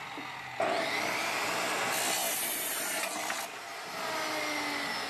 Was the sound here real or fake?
real